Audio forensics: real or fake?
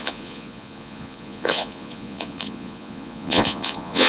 fake